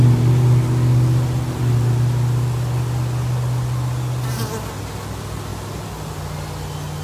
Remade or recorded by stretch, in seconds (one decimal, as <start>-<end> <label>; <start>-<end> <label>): 0.0-7.0 recorded